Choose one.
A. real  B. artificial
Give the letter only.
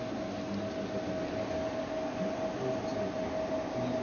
A